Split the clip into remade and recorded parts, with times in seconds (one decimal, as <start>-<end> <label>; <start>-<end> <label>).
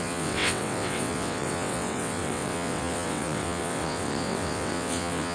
0.0-5.3 remade